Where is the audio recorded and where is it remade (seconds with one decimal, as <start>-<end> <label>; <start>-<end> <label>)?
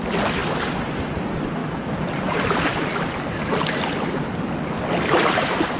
0.0-5.8 recorded